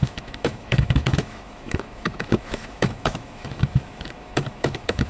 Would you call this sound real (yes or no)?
no